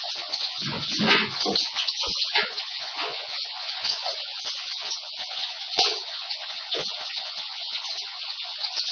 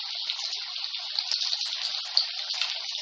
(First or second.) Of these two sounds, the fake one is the first